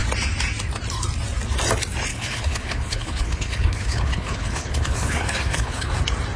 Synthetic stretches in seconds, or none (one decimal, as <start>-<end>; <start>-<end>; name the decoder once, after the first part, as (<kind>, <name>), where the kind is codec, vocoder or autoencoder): 2.1-5.9 (codec, HILCodec)